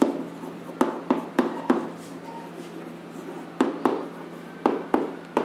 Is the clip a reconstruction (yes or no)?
no